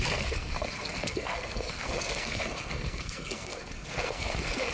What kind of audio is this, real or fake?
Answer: fake